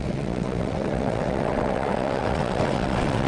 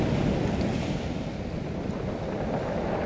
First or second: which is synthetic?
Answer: first